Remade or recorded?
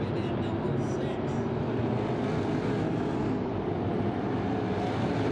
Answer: recorded